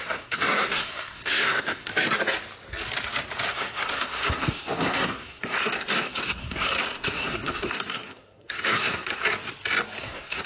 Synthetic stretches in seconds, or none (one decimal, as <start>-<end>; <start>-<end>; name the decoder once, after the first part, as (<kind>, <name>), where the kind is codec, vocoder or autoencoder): 0.0-1.9 (codec, SNAC); 3.5-9.2; 10.0-10.5